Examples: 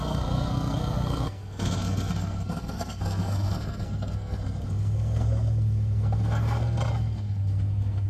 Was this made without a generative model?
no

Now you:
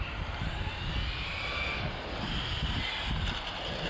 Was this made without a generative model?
yes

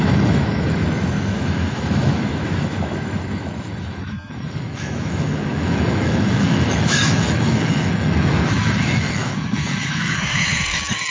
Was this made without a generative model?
no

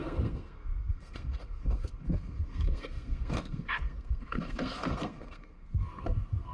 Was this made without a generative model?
no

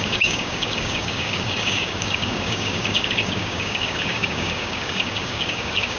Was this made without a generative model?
no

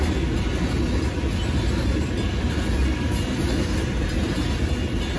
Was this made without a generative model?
yes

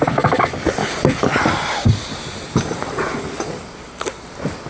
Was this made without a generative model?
yes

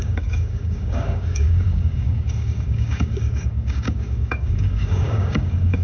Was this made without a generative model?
no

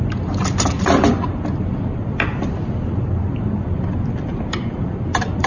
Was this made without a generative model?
no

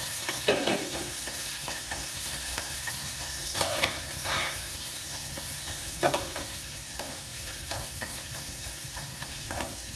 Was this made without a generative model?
no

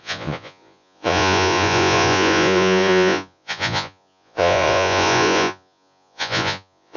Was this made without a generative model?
no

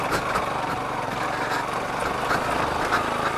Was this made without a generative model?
yes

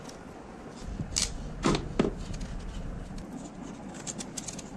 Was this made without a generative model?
yes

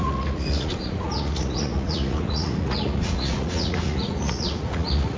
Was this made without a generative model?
no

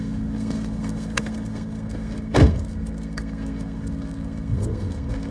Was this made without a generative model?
no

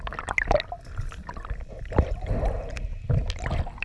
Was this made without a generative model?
yes